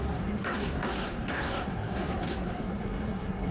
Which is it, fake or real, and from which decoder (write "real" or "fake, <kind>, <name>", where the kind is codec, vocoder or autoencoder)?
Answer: fake, codec, SNAC